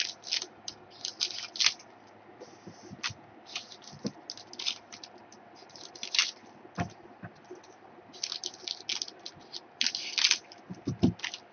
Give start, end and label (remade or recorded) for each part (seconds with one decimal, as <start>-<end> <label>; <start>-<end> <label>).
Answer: 0.0-11.5 recorded